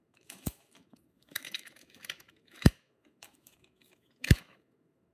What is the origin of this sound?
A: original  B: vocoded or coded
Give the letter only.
B